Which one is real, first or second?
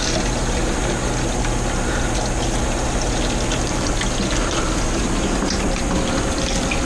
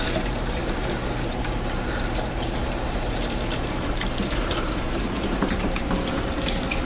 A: first